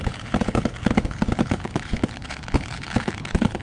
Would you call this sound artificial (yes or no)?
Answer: yes